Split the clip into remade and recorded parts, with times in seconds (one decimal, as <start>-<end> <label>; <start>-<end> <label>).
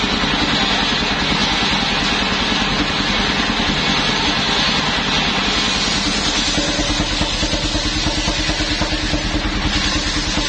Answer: 0.0-10.5 recorded